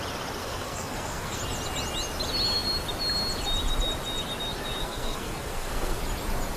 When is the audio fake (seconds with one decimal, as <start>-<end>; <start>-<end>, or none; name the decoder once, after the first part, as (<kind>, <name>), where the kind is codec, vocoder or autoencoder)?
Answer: 0.4-1.4 (codec, SNAC); 4.8-6.0